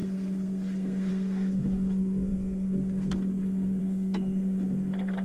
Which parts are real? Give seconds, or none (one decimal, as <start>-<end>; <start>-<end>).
none